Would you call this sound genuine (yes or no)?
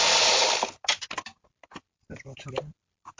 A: no